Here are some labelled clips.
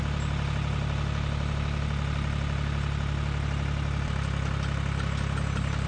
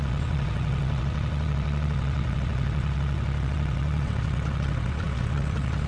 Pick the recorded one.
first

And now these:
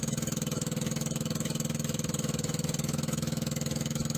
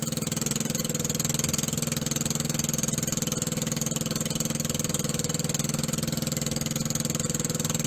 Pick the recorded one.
second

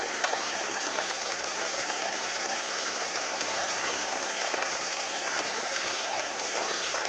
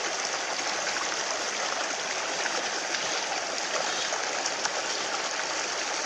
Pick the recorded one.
second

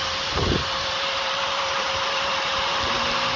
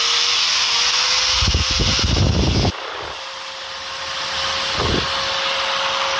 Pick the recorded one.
second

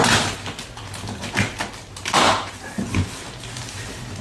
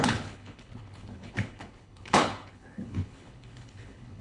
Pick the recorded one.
first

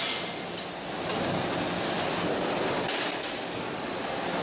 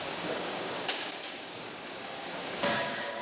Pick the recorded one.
first